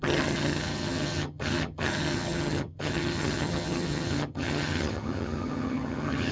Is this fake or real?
fake